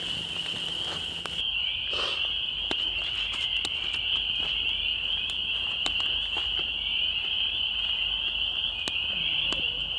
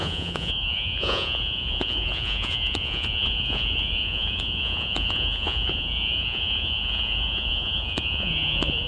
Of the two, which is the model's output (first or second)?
second